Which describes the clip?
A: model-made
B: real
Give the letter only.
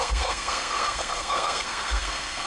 A